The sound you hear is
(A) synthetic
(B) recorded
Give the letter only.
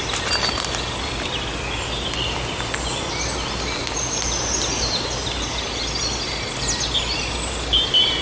B